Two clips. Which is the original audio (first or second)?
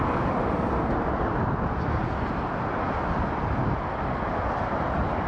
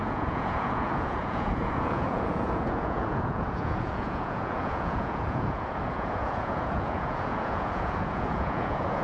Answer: first